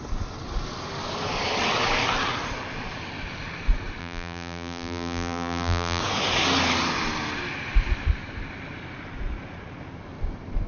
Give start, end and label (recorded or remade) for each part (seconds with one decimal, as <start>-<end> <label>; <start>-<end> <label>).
0.0-4.0 recorded; 4.0-6.0 remade; 6.0-10.7 recorded